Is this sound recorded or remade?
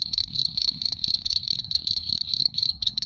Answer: remade